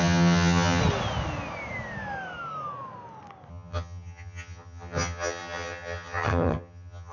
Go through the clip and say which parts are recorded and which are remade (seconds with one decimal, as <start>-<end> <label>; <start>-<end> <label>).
0.0-0.8 remade; 0.8-3.5 recorded; 3.5-7.1 remade